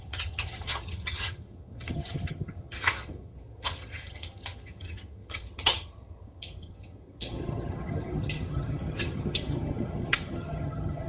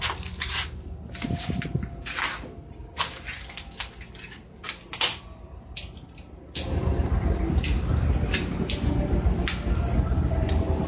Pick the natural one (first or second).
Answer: second